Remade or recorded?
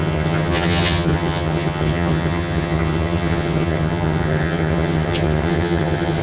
remade